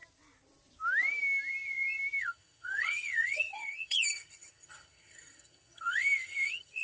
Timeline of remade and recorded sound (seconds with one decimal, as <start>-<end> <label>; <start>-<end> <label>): 0.0-2.2 recorded; 2.2-6.8 remade